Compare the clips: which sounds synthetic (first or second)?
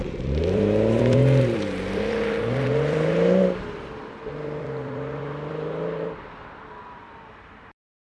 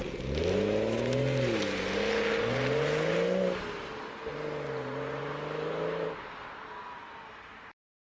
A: first